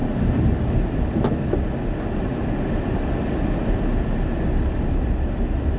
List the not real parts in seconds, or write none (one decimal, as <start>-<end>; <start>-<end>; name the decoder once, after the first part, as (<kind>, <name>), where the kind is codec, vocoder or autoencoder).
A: none